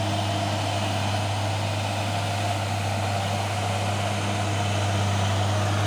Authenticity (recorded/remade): recorded